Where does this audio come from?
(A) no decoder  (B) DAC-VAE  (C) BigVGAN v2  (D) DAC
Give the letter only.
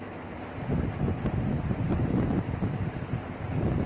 A